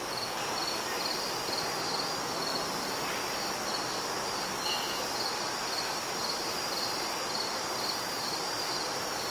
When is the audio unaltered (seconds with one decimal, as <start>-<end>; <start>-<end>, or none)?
0.0-9.3